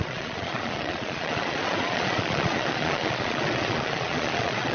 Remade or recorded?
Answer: remade